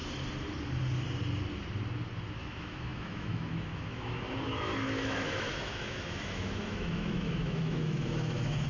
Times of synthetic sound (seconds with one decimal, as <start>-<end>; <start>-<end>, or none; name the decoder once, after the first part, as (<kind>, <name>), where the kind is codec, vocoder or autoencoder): 2.4-8.7 (autoencoder, DAC-VAE)